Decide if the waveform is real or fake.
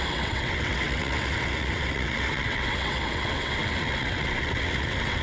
fake